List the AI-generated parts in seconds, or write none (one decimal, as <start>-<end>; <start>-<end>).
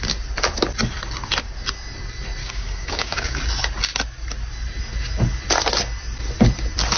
2.4-3.4